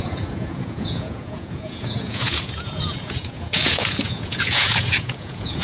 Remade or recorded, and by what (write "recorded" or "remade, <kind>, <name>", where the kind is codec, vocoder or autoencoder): remade, vocoder, Vocos